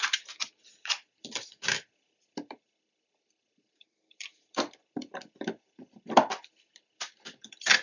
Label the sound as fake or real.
fake